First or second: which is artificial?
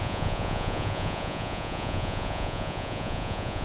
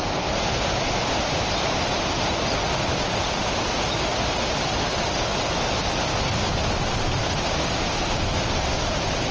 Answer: first